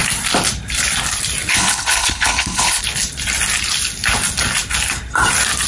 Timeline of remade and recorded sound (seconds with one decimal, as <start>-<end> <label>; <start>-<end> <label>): 0.0-1.5 recorded; 1.5-2.8 remade; 2.8-5.7 recorded